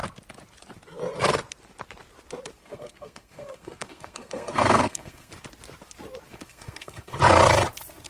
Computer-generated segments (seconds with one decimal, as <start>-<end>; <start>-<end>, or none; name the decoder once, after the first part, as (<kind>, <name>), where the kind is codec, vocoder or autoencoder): 2.6-5.3 (codec, SNAC); 6.3-7.2